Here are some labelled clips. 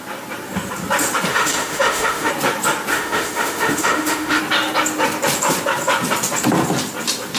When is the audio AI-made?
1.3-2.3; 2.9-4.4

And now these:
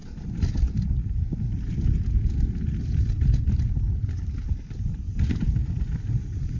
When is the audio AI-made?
none

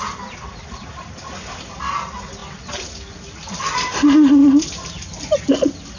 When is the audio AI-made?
none

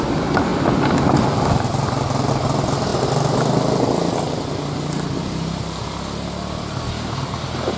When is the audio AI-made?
none

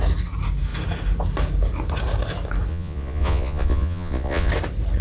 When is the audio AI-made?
2.7-4.5

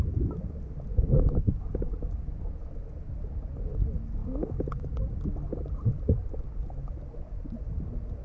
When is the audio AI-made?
none